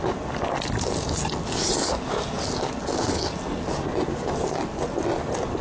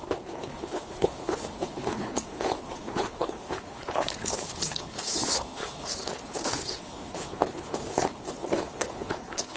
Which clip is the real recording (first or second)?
first